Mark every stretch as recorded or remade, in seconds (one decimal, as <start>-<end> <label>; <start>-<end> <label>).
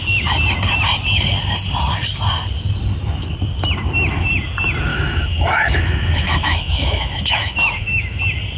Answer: 0.0-4.9 recorded; 4.9-8.2 remade; 8.2-8.6 recorded